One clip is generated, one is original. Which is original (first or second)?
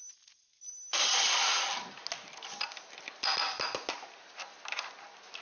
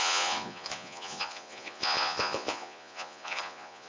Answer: first